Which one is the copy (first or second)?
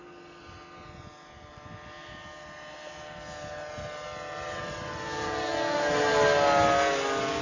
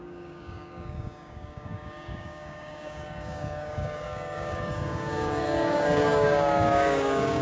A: second